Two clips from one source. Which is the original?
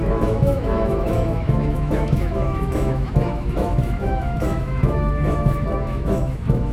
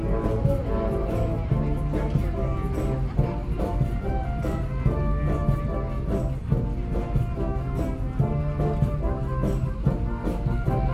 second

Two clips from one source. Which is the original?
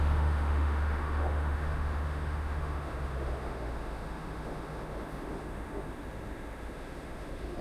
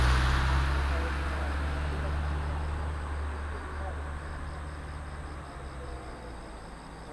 second